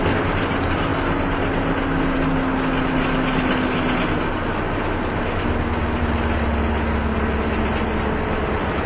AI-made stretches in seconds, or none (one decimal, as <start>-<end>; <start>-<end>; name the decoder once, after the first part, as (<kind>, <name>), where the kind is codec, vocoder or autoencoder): none